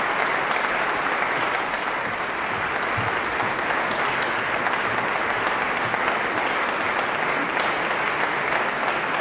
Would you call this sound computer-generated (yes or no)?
no